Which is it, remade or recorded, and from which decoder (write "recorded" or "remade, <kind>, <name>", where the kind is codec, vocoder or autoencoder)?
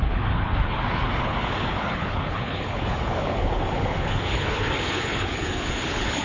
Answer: remade, codec, HILCodec